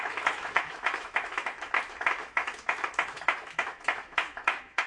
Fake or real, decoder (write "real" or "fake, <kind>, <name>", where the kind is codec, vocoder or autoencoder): fake, autoencoder, DAC-VAE